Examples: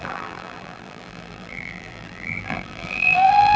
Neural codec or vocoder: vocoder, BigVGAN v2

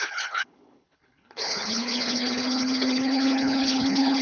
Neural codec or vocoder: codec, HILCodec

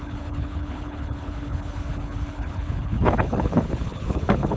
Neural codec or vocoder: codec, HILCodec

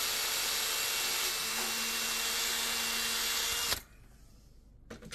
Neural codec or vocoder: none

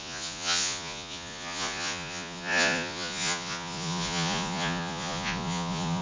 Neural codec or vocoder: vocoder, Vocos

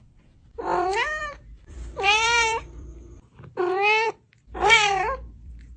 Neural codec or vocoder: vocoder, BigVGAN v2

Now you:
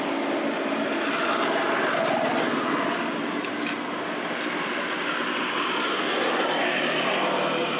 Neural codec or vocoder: none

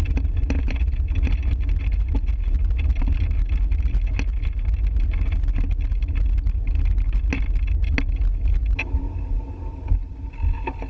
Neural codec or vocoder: none